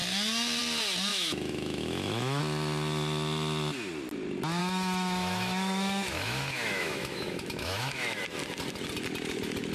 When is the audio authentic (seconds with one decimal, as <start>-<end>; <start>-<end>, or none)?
0.0-1.1; 2.4-4.6; 8.2-9.7